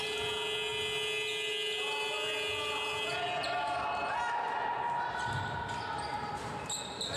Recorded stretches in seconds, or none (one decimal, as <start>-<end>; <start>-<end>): 0.0-7.2